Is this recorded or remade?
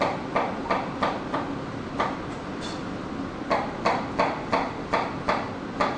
recorded